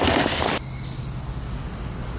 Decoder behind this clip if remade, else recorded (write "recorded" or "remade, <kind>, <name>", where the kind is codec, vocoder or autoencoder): recorded